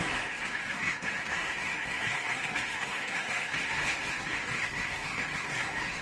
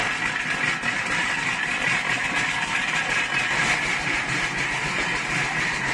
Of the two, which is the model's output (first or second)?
first